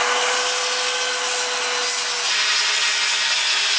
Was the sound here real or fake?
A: real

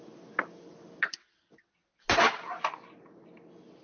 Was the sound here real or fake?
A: real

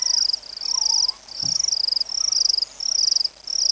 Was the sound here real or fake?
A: real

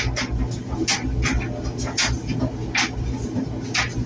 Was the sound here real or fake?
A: real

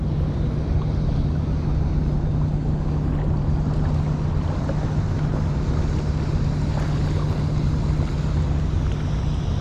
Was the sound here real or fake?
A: real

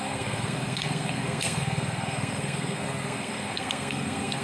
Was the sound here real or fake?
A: fake